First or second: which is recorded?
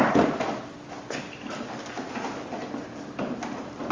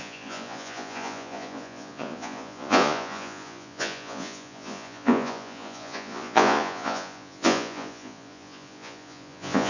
first